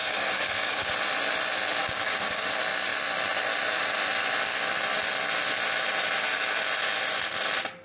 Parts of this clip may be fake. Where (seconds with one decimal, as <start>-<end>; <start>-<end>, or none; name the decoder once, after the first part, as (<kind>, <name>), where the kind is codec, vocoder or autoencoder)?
0.0-0.9 (codec, DAC); 1.8-2.5